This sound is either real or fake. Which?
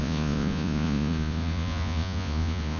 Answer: fake